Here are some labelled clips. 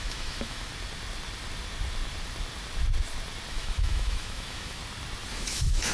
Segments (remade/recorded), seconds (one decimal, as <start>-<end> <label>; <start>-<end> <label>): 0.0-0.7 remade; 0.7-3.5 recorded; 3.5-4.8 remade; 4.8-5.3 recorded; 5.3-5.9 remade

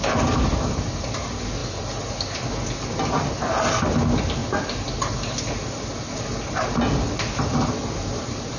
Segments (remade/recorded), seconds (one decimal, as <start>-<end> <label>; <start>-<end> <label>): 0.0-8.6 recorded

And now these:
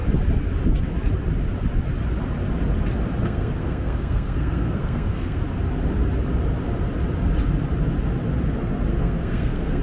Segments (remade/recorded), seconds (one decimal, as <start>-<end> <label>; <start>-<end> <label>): 0.0-3.2 recorded; 3.2-5.4 remade; 5.4-8.9 recorded; 8.9-9.8 remade

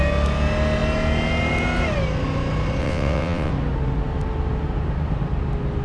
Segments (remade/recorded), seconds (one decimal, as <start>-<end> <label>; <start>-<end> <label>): 0.0-2.8 recorded; 2.8-3.5 remade; 3.5-5.8 recorded

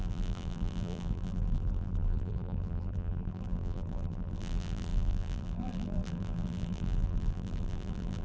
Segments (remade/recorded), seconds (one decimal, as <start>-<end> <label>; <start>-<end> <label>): 0.0-8.2 remade

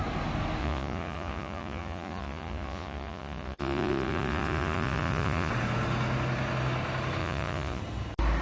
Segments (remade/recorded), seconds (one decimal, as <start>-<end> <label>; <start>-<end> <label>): 0.0-0.6 recorded; 0.6-5.5 remade; 5.5-7.2 recorded; 7.2-7.8 remade; 7.8-8.4 recorded